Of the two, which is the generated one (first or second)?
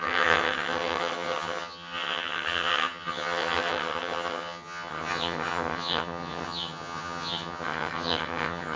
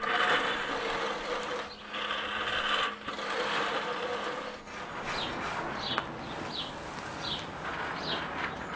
first